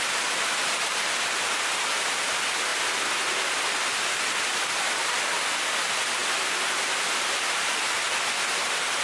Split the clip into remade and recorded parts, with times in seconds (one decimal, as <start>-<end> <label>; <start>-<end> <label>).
0.0-9.0 recorded